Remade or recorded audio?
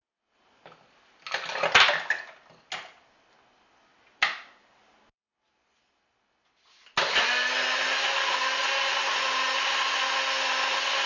recorded